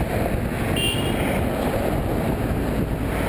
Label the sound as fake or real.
real